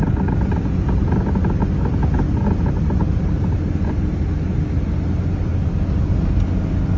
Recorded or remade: recorded